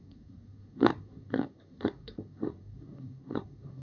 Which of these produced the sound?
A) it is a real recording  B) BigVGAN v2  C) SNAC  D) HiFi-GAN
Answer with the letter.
C